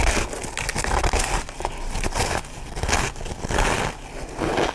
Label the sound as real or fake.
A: real